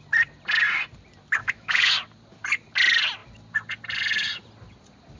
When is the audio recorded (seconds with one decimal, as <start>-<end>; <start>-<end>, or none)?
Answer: 0.0-1.4; 1.9-5.2